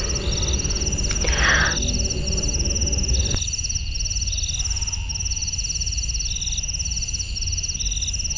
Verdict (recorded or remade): recorded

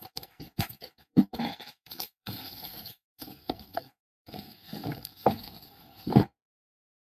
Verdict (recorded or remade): remade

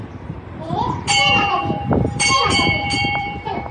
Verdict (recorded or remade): remade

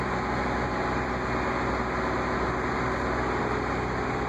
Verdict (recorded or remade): recorded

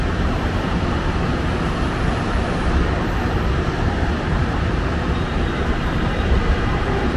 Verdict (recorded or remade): remade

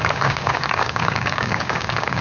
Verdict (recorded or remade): remade